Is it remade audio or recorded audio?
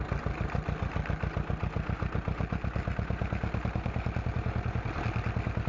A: recorded